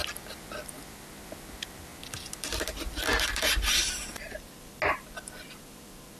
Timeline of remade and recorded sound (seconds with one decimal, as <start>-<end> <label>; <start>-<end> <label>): 0.0-6.2 recorded